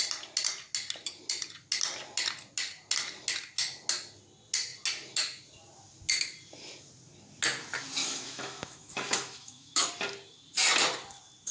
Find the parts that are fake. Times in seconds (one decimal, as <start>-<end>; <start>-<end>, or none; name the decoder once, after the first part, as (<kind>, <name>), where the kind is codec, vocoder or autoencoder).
8.0-9.9 (autoencoder, DAC-VAE)